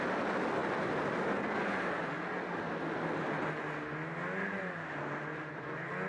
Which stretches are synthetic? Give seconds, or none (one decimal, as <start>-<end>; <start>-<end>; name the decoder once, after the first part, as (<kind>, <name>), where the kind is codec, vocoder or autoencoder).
none